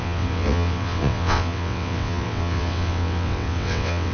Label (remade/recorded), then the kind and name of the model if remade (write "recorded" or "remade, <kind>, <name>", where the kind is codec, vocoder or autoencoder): remade, vocoder, WaveNeXt